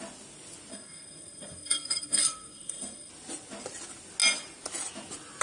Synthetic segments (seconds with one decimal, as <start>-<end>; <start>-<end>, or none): 0.7-3.1